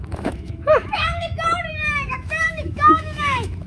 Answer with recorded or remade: remade